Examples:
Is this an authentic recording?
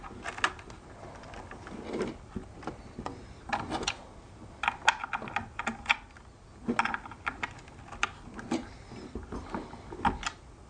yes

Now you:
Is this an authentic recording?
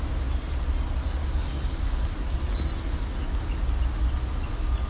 yes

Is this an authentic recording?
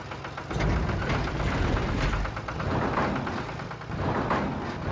yes